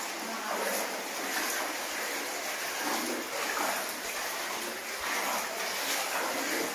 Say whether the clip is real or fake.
real